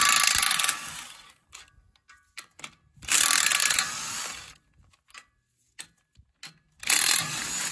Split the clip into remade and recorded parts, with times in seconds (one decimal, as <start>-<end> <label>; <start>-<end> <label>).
0.0-7.7 recorded